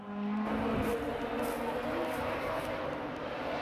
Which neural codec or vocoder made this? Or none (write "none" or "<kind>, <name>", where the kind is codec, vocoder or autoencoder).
none